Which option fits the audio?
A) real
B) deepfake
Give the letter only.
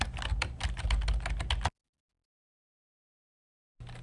A